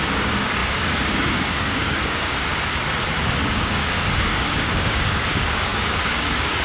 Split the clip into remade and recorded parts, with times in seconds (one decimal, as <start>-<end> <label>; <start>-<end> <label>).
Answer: 0.0-2.5 remade; 2.5-3.5 recorded; 3.5-6.6 remade